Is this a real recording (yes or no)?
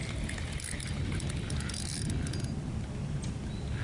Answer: yes